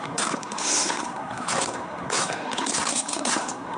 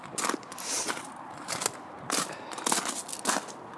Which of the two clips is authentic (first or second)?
second